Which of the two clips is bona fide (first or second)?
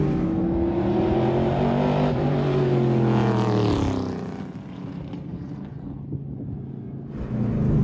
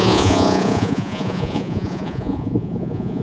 first